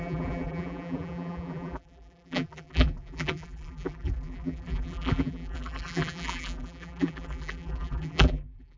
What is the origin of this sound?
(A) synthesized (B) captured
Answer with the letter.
A